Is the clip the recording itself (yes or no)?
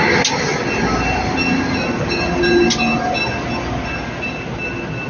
yes